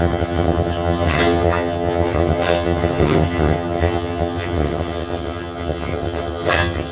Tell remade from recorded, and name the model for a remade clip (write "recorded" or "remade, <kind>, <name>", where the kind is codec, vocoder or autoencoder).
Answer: remade, vocoder, HiFi-GAN